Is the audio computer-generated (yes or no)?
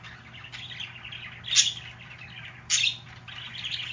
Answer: no